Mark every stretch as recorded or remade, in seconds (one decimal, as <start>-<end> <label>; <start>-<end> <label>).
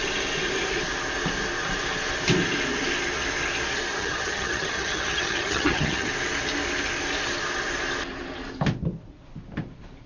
0.0-4.0 recorded; 4.0-6.1 remade; 6.1-10.1 recorded